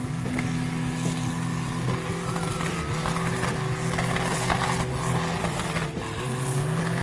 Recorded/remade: recorded